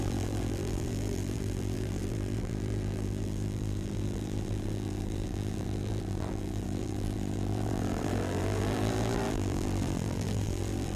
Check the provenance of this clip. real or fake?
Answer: fake